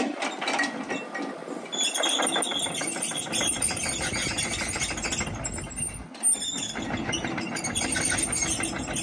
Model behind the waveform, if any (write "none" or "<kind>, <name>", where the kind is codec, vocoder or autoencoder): none